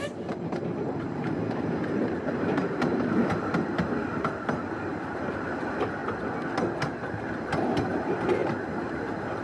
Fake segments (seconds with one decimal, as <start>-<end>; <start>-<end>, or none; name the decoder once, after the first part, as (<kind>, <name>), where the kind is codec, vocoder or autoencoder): 0.0-3.5 (vocoder, BigVGAN v2); 4.9-6.0; 6.9-9.4